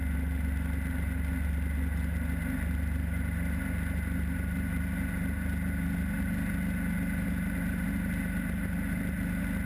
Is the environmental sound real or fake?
real